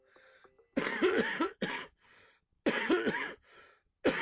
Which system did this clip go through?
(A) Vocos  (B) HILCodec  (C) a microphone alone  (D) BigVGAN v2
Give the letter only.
C